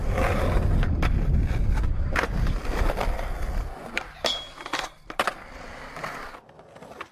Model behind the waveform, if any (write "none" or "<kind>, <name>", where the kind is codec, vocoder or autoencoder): none